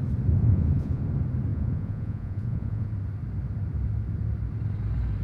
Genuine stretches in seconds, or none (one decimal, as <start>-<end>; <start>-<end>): 0.0-0.4; 1.0-1.5; 2.9-5.2